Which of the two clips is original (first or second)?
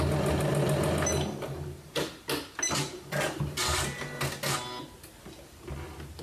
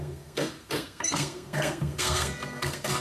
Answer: first